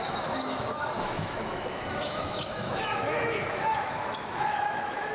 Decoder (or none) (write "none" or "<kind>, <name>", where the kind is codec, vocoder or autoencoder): autoencoder, DAC-VAE